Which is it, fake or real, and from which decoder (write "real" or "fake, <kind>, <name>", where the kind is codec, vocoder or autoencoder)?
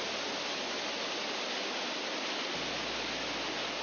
real